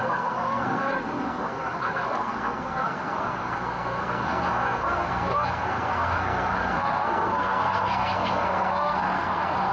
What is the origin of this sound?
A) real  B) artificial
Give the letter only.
B